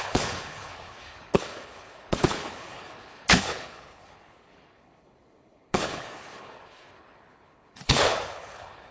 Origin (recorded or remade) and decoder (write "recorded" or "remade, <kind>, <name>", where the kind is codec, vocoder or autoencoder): remade, codec, HILCodec